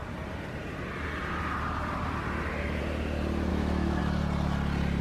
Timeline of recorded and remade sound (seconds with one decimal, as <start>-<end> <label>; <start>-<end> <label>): 0.0-3.5 recorded; 3.5-4.0 remade; 4.0-5.0 recorded